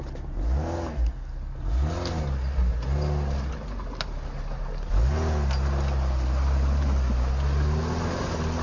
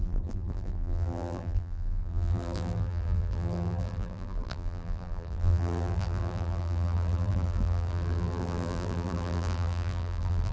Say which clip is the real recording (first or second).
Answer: first